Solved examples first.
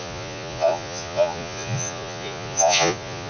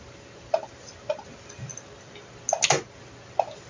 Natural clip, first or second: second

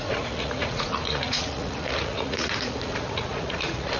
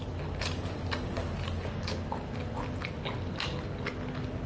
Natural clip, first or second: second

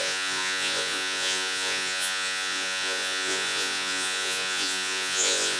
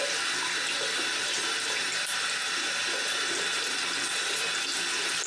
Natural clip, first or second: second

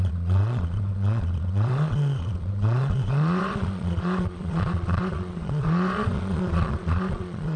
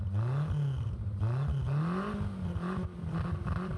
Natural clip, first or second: second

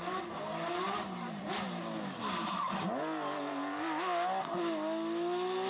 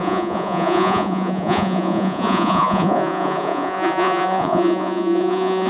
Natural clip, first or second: first